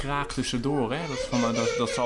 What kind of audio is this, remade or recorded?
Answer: recorded